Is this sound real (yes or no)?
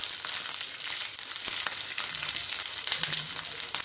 yes